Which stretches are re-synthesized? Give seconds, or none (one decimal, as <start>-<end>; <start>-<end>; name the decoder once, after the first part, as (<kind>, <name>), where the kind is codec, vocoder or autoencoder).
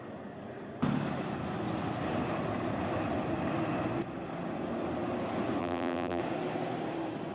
5.6-6.2 (vocoder, BigVGAN v2)